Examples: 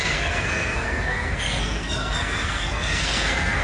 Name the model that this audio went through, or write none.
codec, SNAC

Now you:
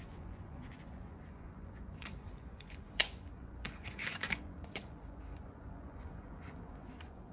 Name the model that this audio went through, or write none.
vocoder, Vocos